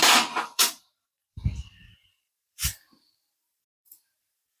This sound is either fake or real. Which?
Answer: fake